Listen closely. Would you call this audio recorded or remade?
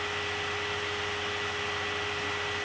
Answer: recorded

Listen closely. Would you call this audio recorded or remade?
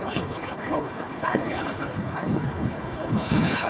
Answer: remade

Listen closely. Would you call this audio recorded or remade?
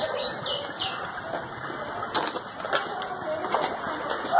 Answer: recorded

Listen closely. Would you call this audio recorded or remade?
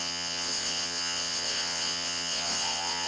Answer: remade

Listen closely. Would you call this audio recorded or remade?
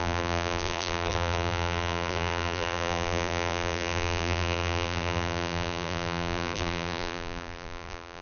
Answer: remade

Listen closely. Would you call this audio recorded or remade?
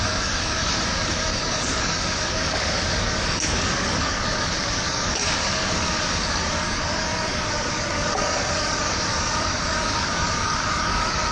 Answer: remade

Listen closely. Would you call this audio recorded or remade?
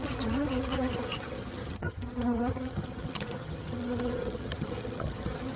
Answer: remade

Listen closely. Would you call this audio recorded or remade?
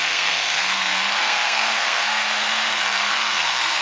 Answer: remade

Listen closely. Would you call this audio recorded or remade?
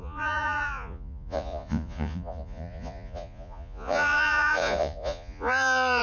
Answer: remade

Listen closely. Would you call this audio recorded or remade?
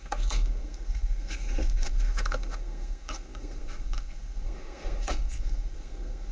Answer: remade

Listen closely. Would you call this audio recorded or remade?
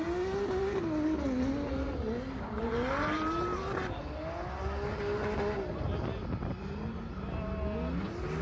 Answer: recorded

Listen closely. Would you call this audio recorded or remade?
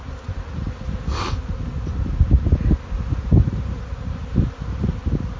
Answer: recorded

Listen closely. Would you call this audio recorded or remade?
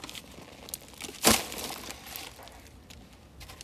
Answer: recorded